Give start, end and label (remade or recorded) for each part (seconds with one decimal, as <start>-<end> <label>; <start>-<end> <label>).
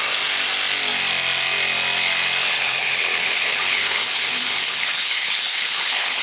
0.0-2.4 recorded; 2.4-6.2 remade